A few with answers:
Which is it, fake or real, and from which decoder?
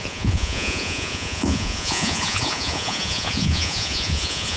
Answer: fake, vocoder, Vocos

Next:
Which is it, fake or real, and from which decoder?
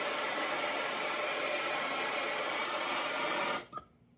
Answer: real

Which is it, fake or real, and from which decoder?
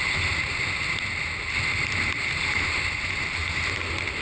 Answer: real